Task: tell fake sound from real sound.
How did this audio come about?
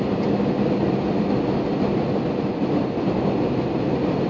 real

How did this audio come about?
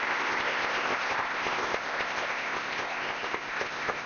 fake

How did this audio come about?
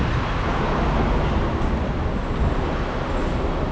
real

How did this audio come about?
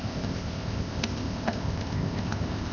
fake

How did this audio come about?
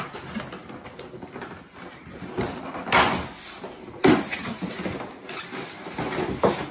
real